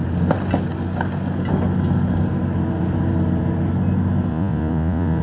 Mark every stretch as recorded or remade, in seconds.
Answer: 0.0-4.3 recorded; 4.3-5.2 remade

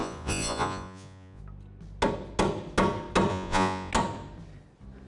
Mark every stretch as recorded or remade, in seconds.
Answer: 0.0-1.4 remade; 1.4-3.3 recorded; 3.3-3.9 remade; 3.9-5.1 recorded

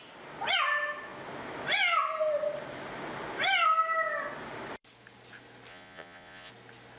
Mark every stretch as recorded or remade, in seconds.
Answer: 0.0-5.7 recorded; 5.7-6.5 remade; 6.5-7.0 recorded

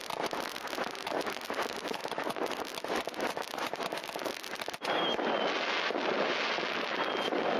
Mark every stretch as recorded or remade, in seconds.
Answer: 0.0-7.6 recorded